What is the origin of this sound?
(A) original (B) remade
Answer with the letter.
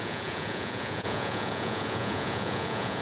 B